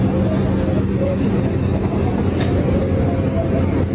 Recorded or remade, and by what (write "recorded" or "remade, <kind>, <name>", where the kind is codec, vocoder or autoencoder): recorded